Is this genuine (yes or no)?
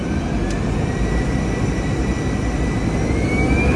yes